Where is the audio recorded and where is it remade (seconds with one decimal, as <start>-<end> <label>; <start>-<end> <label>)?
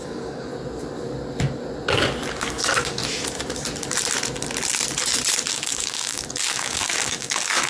0.0-0.5 remade; 0.5-2.3 recorded; 2.3-3.0 remade; 3.0-5.5 recorded; 5.5-7.7 remade